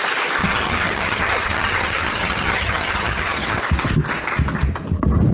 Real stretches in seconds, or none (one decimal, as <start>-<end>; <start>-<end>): 0.0-0.4; 3.6-5.3